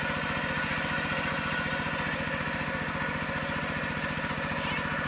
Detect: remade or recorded recorded